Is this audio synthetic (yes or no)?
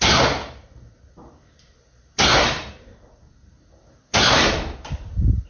no